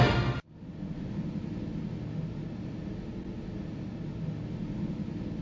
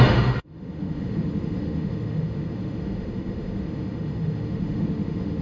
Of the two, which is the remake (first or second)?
second